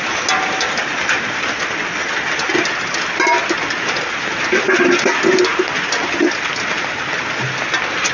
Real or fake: real